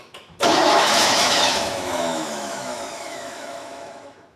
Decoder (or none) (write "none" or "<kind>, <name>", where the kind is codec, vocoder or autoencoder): autoencoder, DAC-VAE